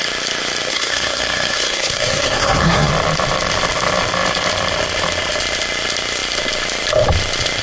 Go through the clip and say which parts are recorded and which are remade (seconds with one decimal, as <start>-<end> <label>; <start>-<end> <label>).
0.0-0.7 recorded; 0.7-2.9 remade; 2.9-7.6 recorded